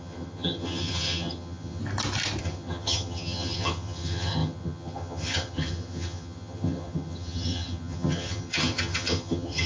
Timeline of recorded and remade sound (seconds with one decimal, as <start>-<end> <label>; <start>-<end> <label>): 0.0-1.8 remade; 1.8-2.4 recorded; 2.4-9.7 remade

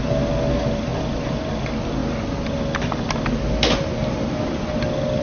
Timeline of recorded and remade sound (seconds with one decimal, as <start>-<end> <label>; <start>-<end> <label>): 0.0-5.2 recorded

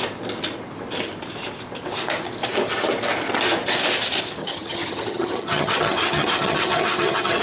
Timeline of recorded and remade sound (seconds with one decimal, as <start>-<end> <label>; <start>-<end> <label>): 0.0-4.4 recorded; 4.4-7.4 remade

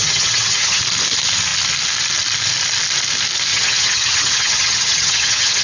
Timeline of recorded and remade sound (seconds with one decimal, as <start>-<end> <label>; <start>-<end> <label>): 0.0-0.8 remade; 0.8-3.5 recorded; 3.5-5.6 remade

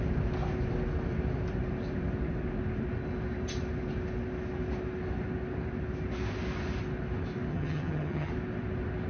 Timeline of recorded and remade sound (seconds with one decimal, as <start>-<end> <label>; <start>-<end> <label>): 0.0-7.5 recorded; 7.5-8.3 remade; 8.3-9.1 recorded

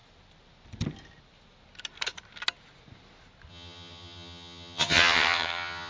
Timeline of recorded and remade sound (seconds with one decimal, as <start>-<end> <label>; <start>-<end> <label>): 0.0-3.5 recorded; 3.5-5.9 remade

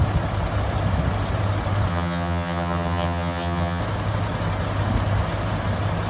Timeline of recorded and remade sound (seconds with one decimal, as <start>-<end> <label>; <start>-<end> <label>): 0.0-1.9 recorded; 1.9-3.8 remade; 3.8-6.1 recorded

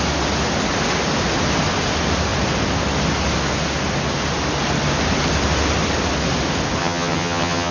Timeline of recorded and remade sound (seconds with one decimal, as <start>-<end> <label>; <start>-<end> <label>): 0.0-6.8 recorded; 6.8-7.7 remade